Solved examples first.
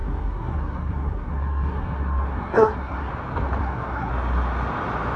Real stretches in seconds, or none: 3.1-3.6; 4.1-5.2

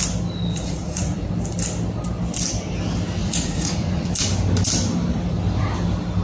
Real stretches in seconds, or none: 0.0-0.5; 1.3-3.2; 4.0-6.2

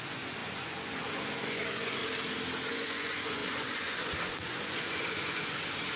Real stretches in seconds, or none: 2.0-2.7

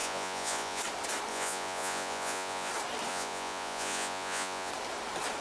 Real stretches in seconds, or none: 0.8-1.3; 2.7-3.1; 4.7-5.4

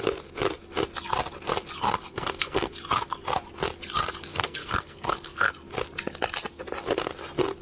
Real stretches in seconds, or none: 0.0-2.1; 2.7-4.3; 5.5-7.6